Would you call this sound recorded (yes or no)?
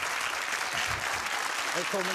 yes